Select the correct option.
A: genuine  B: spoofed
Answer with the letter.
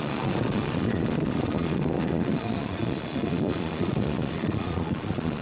B